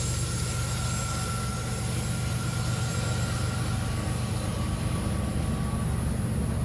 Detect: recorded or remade recorded